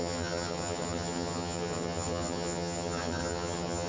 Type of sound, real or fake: fake